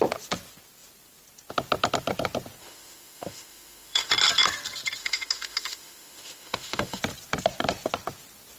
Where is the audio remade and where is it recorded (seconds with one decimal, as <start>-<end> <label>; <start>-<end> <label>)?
0.0-2.6 recorded; 2.6-4.1 remade; 4.1-5.0 recorded; 5.0-7.0 remade; 7.0-8.6 recorded